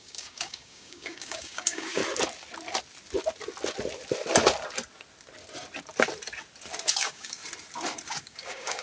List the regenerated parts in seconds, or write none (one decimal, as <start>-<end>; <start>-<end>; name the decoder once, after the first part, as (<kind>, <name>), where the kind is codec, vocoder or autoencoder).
0.0-2.0 (codec, DAC); 6.9-7.4; 8.2-8.8